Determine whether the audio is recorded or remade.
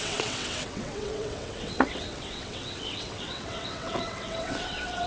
remade